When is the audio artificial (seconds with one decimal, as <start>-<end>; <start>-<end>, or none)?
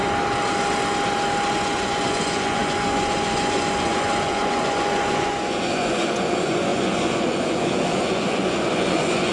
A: 1.5-9.3